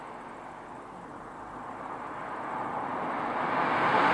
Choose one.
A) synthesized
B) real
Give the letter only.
B